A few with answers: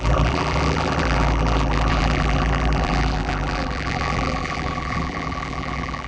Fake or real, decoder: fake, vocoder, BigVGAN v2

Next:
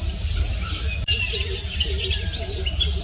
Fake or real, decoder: real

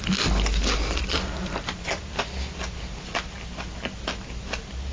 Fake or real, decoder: real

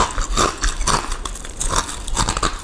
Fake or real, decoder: real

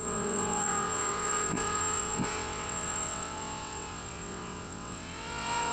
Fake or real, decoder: fake, vocoder, WaveNeXt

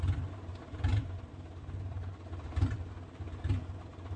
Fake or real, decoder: fake, vocoder, BigVGAN v2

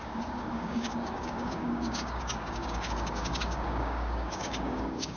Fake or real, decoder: fake, codec, DAC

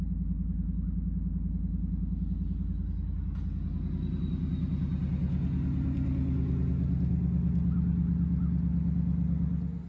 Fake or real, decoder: real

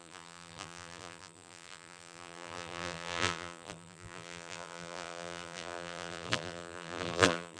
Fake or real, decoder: fake, vocoder, BigVGAN v2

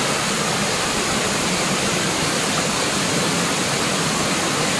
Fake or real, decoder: real